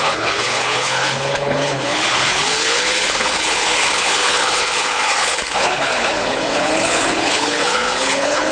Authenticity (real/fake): fake